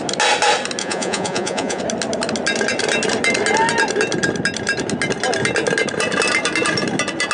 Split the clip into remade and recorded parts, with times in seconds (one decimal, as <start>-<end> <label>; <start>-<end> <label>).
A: 0.0-0.8 recorded; 0.8-1.8 remade; 1.8-7.3 recorded